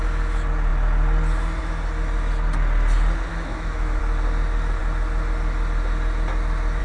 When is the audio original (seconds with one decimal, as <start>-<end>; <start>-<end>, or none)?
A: 0.0-3.3; 4.0-6.8